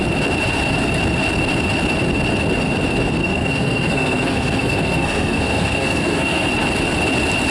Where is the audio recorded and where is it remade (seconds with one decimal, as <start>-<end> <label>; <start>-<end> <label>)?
0.0-3.2 recorded; 3.2-6.5 remade; 6.5-7.5 recorded